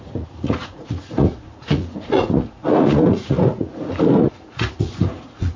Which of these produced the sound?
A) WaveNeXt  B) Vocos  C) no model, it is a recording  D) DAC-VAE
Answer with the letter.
B